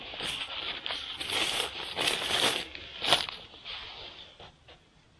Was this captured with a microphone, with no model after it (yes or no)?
yes